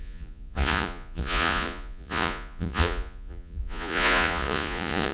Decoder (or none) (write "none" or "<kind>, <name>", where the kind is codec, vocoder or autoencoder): vocoder, Vocos